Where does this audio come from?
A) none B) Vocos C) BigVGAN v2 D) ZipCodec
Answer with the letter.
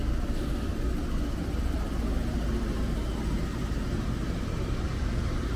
A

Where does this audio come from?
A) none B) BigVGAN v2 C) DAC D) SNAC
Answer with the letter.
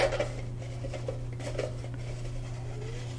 A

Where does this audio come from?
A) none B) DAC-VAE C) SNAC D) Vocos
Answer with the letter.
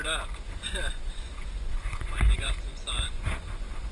D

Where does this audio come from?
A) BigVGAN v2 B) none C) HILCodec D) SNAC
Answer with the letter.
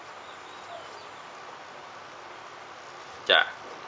B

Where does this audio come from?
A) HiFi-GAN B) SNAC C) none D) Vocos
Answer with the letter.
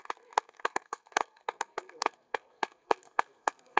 B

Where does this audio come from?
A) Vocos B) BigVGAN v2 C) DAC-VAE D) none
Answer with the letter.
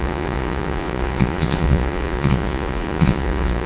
A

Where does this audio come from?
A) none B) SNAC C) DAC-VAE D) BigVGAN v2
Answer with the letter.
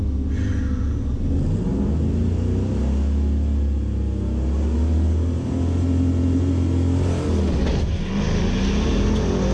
A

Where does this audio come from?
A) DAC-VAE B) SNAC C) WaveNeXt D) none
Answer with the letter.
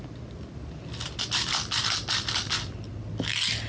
D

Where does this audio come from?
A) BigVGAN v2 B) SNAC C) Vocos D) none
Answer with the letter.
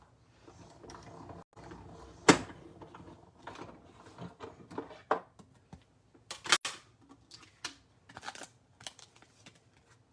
D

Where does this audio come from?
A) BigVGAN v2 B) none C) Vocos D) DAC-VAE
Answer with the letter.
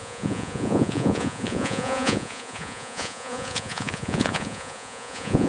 C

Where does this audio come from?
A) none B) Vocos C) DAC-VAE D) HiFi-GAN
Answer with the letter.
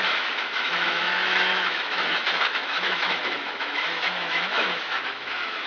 C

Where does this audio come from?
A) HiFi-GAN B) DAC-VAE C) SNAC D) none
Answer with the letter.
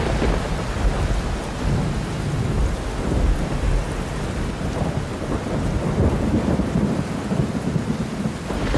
D